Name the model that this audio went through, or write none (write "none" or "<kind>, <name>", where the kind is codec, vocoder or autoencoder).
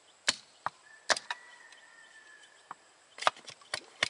none